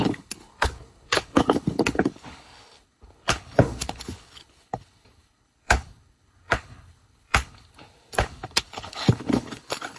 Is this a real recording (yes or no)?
no